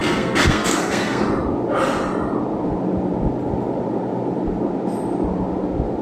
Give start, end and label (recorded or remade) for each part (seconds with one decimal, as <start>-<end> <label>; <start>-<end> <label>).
0.0-1.2 remade; 1.2-6.0 recorded